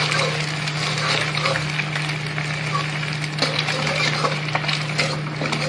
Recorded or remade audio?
recorded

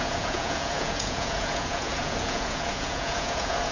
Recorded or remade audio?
remade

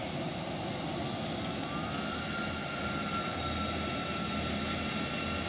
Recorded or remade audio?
recorded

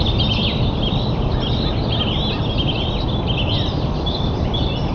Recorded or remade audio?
recorded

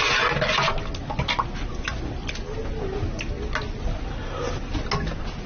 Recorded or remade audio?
recorded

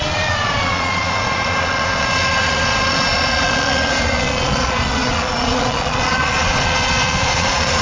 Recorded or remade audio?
remade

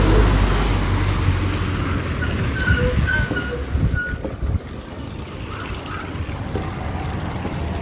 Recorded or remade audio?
recorded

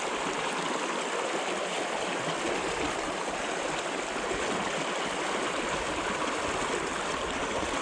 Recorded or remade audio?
recorded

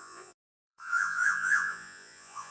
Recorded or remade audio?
remade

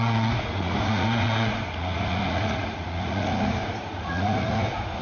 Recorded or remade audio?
remade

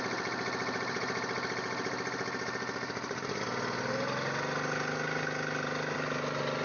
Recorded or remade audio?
recorded